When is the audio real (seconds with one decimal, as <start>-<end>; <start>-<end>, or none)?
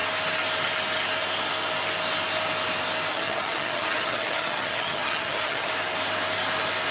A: 0.0-3.1; 5.7-6.9